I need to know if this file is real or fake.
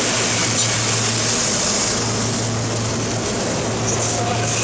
real